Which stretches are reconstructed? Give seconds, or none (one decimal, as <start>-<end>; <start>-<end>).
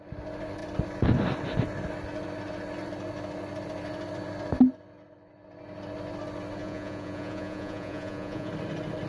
6.6-8.5